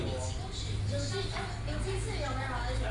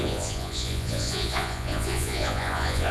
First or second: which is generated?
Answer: second